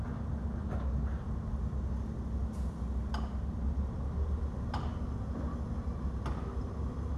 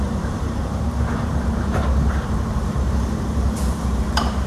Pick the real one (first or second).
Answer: first